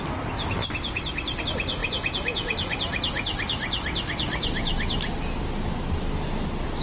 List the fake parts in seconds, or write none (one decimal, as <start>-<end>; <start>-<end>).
0.0-0.6; 1.4-1.8; 5.9-6.8